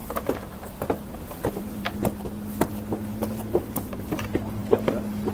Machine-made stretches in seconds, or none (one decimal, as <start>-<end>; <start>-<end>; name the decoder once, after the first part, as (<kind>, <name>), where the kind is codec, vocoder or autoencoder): 0.0-2.0 (vocoder, BigVGAN v2); 3.1-5.3

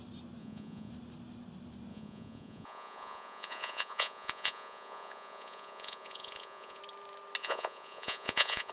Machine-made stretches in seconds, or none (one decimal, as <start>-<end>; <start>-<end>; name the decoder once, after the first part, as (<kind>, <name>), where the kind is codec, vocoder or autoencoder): 0.4-0.9 (vocoder, Vocos); 1.9-6.8; 7.4-8.7

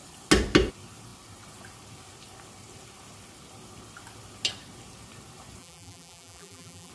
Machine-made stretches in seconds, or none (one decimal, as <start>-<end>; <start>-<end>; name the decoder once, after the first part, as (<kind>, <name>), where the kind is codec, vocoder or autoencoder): 5.6-6.9 (vocoder, BigVGAN v2)

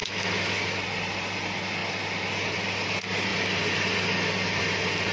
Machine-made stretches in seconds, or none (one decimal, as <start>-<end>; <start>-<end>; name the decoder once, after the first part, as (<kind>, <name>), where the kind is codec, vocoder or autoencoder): 0.0-0.8 (autoencoder, DAC-VAE)

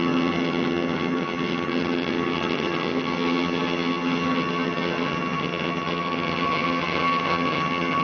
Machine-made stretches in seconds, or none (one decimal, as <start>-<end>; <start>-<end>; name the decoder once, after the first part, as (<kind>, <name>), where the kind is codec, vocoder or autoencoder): 0.0-8.0 (vocoder, HiFi-GAN)

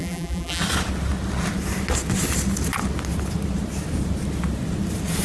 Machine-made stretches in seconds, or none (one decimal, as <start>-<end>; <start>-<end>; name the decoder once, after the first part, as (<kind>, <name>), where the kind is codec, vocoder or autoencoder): 0.0-0.6 (vocoder, BigVGAN v2)

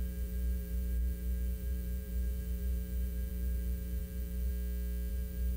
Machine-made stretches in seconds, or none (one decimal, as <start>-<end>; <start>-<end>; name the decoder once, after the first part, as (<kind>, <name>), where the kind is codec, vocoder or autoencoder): 0.0-4.5 (vocoder, BigVGAN v2); 5.1-5.6